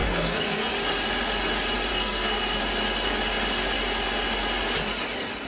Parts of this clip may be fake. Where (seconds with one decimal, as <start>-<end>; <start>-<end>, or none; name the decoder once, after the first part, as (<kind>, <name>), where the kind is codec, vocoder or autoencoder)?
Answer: 0.0-0.7 (codec, SNAC); 1.9-2.6